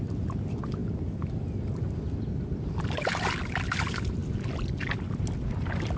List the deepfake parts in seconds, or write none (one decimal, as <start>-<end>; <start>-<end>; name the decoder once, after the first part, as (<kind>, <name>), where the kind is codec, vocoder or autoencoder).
none